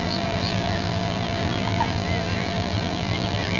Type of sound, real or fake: fake